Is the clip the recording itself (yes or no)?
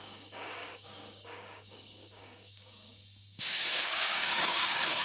no